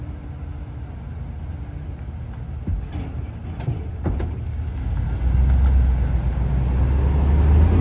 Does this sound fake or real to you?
real